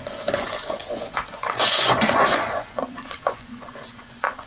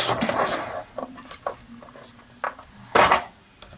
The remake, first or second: first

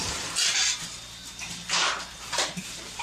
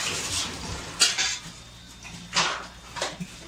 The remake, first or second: first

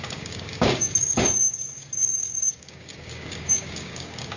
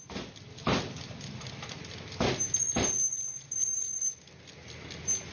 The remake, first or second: first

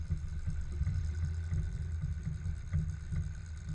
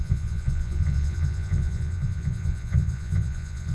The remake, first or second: second